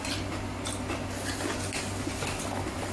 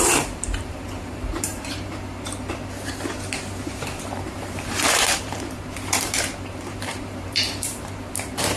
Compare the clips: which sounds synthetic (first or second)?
second